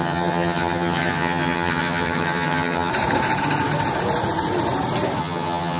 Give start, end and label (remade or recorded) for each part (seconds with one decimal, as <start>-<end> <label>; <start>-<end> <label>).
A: 0.0-2.9 remade; 2.9-5.2 recorded; 5.2-5.8 remade